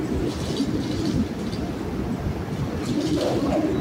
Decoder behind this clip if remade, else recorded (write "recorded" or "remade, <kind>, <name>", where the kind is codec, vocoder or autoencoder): recorded